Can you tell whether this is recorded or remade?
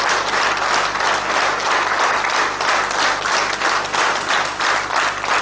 recorded